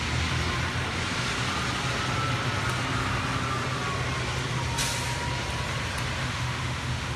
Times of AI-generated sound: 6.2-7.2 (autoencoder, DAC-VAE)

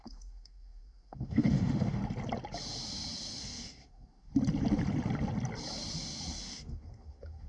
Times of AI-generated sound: 0.0-2.0 (autoencoder, DAC-VAE); 3.4-4.3; 6.4-7.5

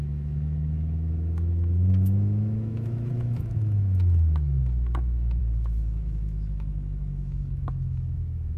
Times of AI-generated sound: 0.0-8.6 (autoencoder, DAC-VAE)

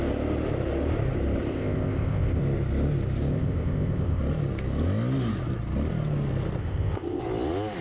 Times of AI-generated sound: 1.5-2.4 (codec, ZipCodec); 3.3-4.2; 6.6-7.2

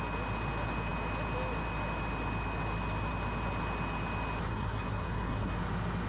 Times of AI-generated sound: 4.5-5.6 (codec, SNAC)